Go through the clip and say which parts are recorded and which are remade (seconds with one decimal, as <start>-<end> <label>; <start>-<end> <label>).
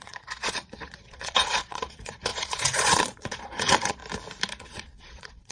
0.0-4.0 remade; 4.0-4.6 recorded; 4.6-5.5 remade